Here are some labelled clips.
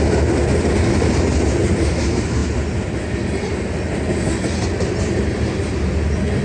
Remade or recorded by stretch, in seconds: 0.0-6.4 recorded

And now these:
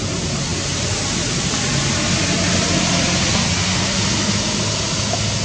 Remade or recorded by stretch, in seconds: 0.0-5.4 recorded

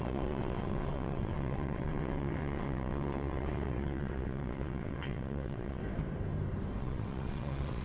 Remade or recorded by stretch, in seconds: 0.0-5.8 remade; 5.8-6.8 recorded; 6.8-7.8 remade